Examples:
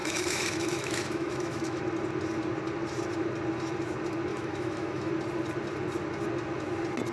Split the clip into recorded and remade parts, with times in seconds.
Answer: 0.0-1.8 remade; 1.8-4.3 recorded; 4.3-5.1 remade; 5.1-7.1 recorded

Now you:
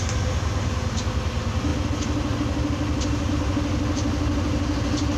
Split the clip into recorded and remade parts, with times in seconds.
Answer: 0.0-5.2 recorded

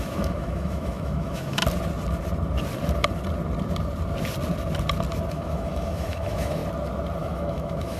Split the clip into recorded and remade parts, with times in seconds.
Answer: 0.0-1.6 remade; 1.6-5.3 recorded; 5.3-6.6 remade; 6.6-7.2 recorded; 7.2-8.0 remade

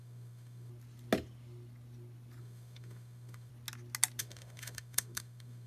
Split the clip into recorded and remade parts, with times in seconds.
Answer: 0.0-0.7 remade; 0.7-2.4 recorded; 2.4-3.5 remade; 3.5-4.2 recorded; 4.2-5.7 remade

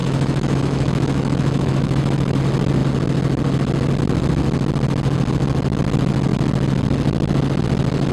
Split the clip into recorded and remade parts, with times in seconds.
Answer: 0.0-2.4 remade; 2.4-8.1 recorded

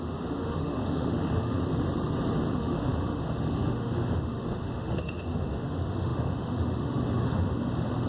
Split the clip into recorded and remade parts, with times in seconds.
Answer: 0.0-1.6 remade; 1.6-2.5 recorded; 2.5-8.1 remade

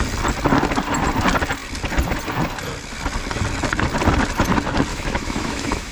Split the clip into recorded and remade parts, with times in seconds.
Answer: 0.0-4.9 recorded; 4.9-5.9 remade